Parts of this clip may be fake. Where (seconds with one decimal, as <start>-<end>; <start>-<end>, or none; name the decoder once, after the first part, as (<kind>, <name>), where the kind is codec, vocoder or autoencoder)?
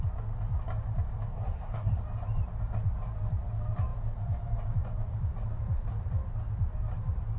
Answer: 1.3-1.9 (codec, SNAC)